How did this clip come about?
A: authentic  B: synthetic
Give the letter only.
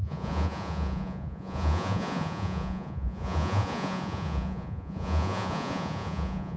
B